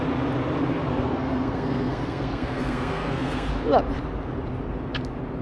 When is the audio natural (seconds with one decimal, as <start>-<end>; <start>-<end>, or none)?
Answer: 0.0-0.9; 3.5-5.4